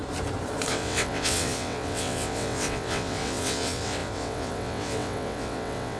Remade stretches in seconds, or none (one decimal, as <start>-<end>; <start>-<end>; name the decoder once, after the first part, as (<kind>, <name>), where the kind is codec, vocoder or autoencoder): 0.7-6.0 (vocoder, WaveNeXt)